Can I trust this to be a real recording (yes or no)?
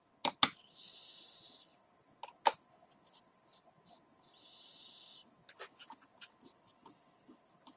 yes